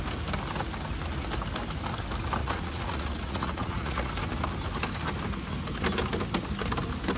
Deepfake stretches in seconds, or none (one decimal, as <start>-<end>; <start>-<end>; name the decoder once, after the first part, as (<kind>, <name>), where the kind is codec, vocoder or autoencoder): 2.4-4.1 (vocoder, Vocos)